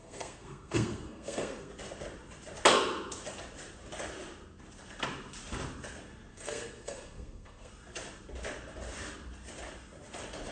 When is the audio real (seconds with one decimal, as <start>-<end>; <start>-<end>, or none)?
1.7-6.3; 7.7-10.5